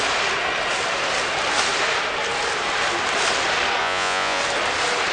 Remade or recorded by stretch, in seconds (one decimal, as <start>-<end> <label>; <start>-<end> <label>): 0.0-3.8 recorded; 3.8-4.4 remade; 4.4-5.1 recorded